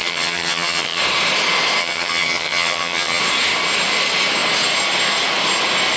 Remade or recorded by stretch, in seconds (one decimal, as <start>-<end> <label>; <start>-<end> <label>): 0.0-1.0 remade; 1.0-1.8 recorded; 1.8-3.2 remade; 3.2-6.0 recorded